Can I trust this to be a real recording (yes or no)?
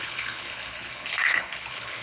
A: no